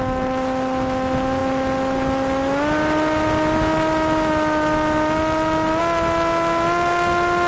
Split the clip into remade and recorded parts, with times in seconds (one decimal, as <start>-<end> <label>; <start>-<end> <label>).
0.0-7.5 recorded